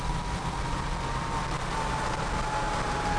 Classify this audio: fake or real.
real